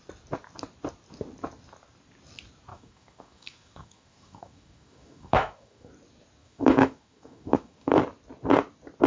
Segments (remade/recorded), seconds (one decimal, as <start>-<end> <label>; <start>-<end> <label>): 0.0-2.7 recorded; 2.7-5.9 remade; 5.9-6.4 recorded; 6.4-8.0 remade; 8.0-9.1 recorded